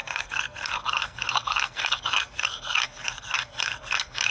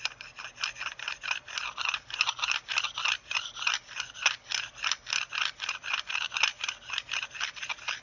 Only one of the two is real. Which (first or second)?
second